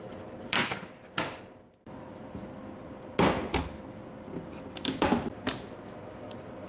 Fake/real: real